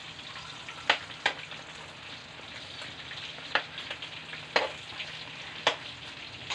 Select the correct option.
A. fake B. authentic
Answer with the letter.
B